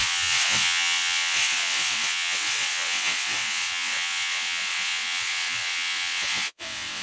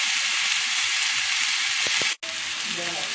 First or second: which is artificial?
first